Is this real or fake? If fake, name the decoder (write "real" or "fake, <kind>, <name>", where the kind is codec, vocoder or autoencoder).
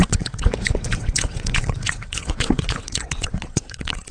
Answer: fake, vocoder, WaveNeXt